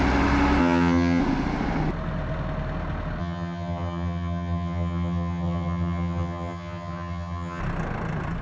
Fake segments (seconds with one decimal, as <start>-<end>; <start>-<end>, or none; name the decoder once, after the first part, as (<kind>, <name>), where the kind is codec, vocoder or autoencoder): 0.6-1.2 (vocoder, HiFi-GAN); 3.2-7.6